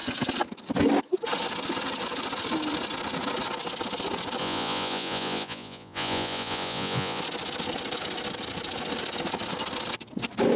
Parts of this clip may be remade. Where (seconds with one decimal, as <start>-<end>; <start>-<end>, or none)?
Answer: 4.4-7.2